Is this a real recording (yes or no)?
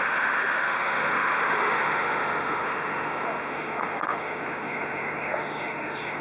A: no